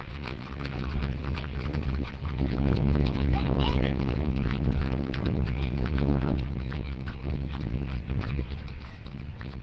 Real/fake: fake